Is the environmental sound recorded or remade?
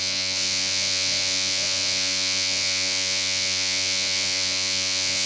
remade